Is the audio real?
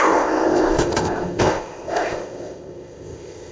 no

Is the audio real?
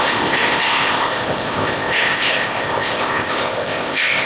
no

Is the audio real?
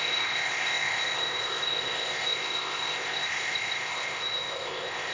no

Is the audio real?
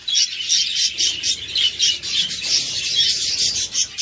yes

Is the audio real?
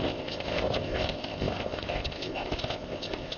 no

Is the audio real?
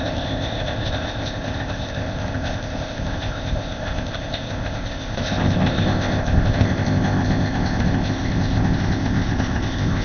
no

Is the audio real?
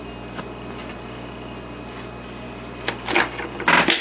yes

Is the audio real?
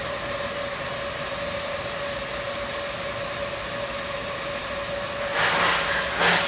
yes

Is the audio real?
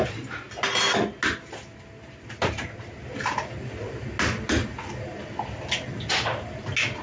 yes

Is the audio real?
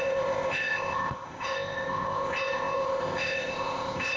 no